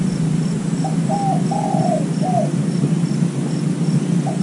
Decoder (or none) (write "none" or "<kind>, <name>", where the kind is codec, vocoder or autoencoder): none